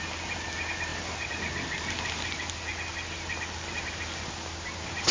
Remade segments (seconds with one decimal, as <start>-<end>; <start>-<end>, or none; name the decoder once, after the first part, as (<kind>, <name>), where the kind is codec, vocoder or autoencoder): none